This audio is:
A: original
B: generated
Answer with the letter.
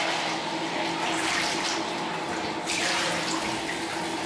A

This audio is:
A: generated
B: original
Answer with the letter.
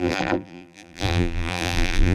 A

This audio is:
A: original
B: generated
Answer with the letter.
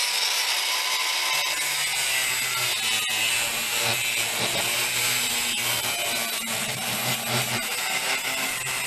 A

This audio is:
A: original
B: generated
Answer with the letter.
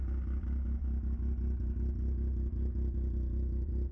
A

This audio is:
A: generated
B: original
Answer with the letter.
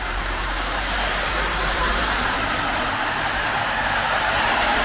A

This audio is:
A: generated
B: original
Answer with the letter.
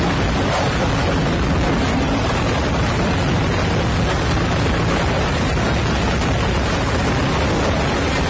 B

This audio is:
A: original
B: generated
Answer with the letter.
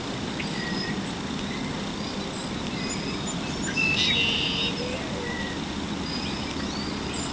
A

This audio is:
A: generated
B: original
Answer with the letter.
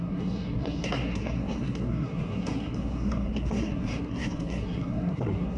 A